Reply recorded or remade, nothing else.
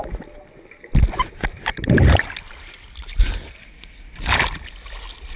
recorded